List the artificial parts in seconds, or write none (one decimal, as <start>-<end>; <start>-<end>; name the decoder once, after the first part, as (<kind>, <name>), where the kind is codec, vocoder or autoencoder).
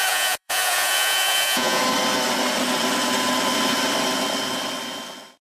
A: 0.0-1.8 (vocoder, Vocos)